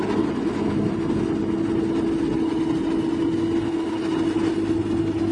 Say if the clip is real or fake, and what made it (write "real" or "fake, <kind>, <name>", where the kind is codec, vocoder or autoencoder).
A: real